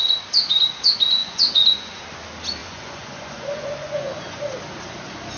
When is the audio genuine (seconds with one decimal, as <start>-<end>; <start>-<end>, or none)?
0.0-1.2; 2.0-2.6; 4.4-5.4

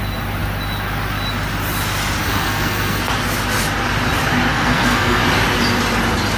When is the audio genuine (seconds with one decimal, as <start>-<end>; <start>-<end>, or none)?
0.0-2.2; 3.1-4.5; 5.2-6.4

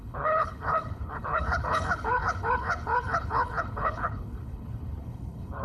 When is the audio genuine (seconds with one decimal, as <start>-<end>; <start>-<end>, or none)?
none

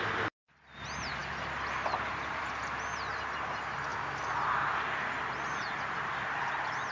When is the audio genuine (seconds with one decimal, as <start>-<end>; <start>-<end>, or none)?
0.0-6.9

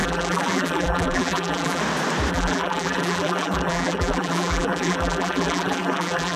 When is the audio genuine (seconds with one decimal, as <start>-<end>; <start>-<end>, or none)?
1.8-2.3